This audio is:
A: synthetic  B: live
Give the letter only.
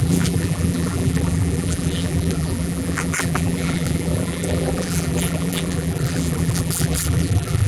A